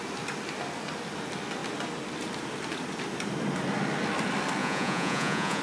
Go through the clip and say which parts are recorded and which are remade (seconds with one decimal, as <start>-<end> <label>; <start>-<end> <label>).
0.0-4.6 recorded; 4.6-5.6 remade